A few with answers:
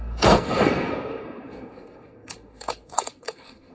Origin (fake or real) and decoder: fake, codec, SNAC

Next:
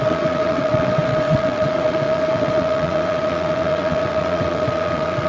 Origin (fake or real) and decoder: fake, vocoder, WaveNeXt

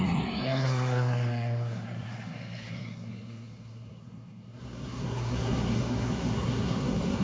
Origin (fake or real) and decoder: fake, codec, SNAC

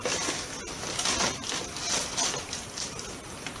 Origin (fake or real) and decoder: real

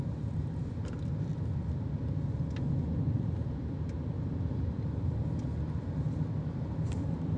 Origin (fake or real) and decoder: real